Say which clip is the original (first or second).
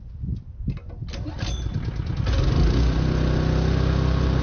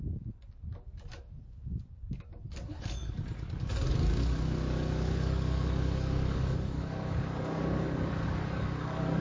first